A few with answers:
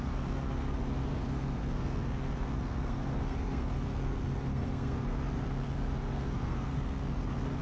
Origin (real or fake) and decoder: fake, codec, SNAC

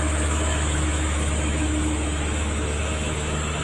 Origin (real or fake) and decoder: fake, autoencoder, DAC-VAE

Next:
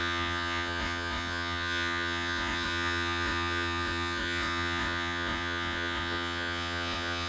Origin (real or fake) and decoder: fake, vocoder, Vocos